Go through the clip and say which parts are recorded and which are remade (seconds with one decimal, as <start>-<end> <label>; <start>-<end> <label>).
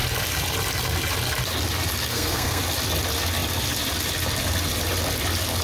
0.0-2.1 recorded; 2.1-2.6 remade; 2.6-5.6 recorded